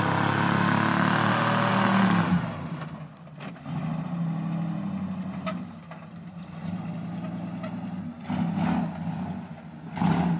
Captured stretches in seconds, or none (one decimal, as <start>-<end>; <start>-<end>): 0.0-10.4